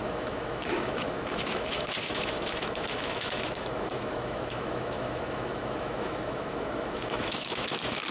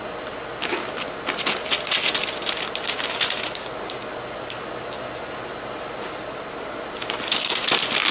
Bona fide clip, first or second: second